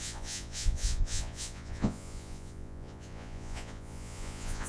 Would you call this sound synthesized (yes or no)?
yes